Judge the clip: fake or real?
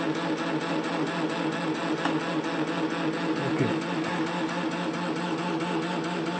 real